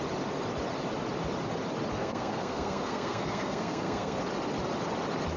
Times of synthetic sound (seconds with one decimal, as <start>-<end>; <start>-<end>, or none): 2.0-4.2